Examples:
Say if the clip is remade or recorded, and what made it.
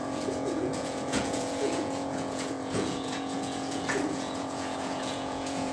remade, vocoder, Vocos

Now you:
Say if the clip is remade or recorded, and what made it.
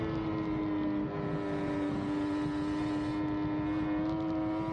recorded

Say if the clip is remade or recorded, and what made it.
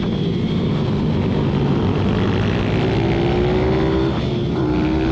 recorded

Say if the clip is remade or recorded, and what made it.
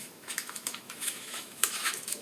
remade, autoencoder, DAC-VAE